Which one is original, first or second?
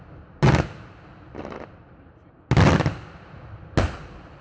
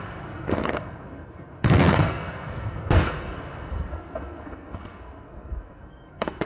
first